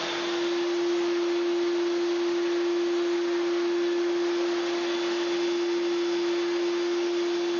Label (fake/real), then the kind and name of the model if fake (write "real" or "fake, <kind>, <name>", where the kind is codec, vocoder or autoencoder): real